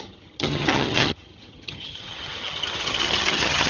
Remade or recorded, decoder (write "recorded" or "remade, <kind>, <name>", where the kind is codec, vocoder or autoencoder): remade, vocoder, HiFi-GAN